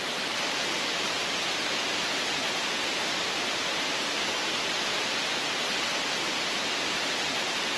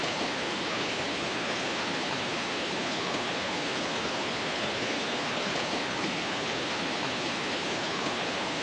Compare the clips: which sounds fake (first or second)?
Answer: second